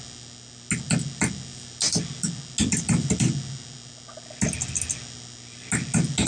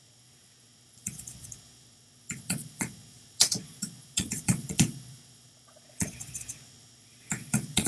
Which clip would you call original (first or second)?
first